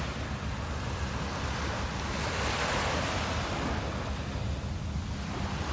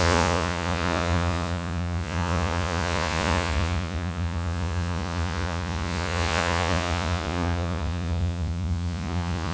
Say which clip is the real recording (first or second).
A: first